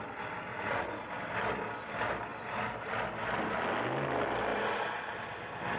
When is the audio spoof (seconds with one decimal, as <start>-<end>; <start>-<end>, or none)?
0.5-1.1